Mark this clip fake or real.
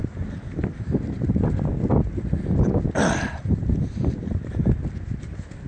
real